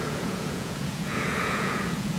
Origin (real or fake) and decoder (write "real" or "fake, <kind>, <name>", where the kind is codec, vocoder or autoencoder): fake, vocoder, Vocos